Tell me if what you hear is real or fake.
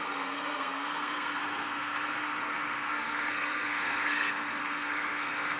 fake